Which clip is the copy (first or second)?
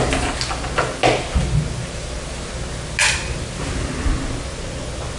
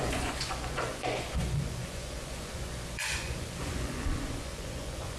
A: second